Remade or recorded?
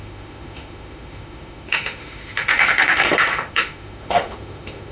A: remade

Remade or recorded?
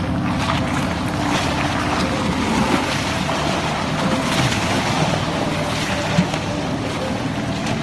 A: recorded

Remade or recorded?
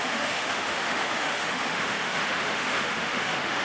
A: remade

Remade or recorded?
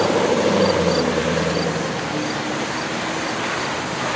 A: recorded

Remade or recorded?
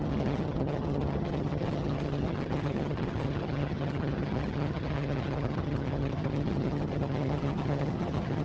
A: remade